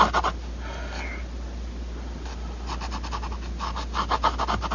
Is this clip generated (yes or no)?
no